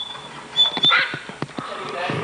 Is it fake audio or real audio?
real